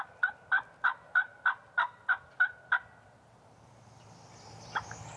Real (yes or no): yes